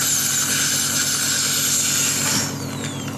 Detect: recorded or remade recorded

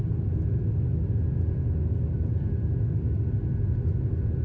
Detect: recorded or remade recorded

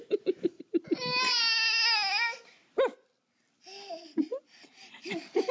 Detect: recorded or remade recorded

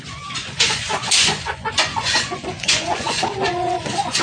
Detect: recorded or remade remade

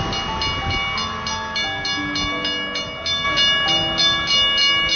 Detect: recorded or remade recorded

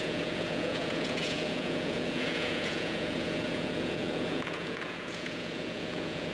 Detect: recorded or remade remade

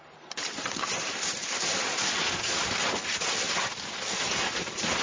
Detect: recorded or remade recorded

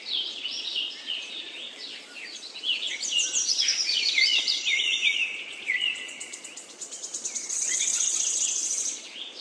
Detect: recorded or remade remade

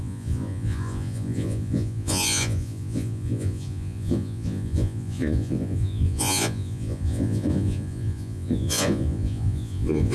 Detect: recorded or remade remade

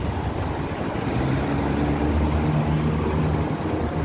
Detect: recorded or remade recorded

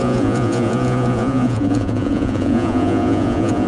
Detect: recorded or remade remade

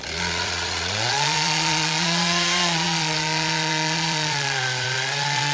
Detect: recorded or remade remade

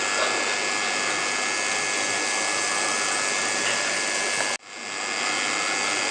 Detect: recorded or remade recorded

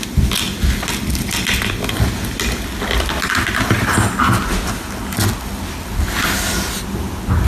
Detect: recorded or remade recorded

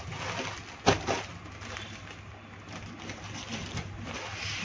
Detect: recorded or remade recorded